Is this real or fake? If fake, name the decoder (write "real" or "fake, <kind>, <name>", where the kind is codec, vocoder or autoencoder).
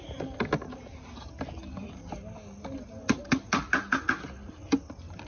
real